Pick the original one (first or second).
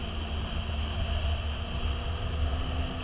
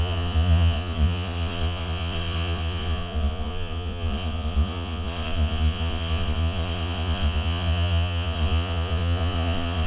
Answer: first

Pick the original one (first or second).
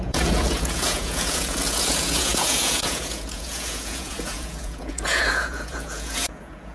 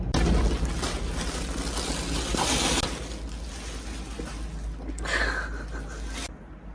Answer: second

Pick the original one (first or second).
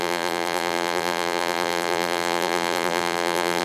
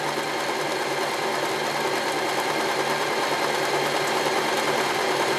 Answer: second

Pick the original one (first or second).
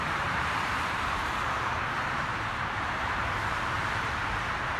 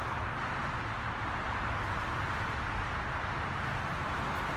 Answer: second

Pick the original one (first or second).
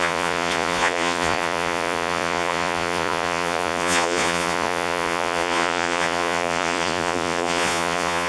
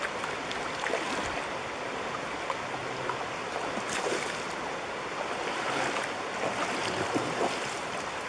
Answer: second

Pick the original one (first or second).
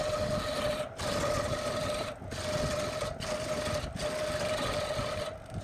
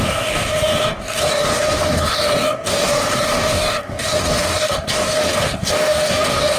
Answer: first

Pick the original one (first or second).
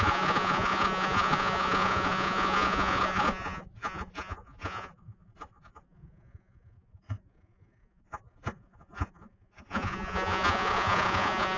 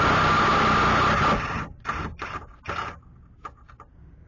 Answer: second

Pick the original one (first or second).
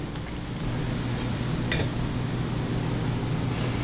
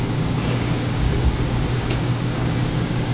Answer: first